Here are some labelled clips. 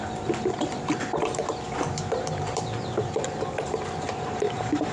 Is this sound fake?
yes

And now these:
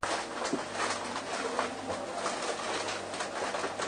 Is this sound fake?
no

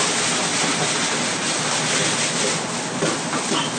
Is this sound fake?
no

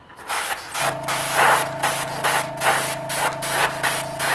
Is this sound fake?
no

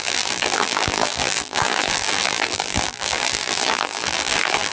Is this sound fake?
yes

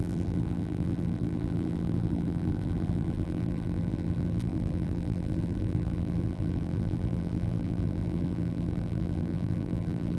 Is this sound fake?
yes